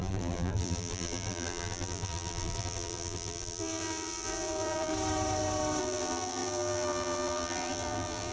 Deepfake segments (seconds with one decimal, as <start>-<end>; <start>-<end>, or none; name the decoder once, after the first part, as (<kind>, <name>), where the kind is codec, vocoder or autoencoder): 0.0-4.9 (vocoder, BigVGAN v2); 5.8-8.3